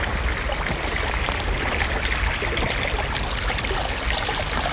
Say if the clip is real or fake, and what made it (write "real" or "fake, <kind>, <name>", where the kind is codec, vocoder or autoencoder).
real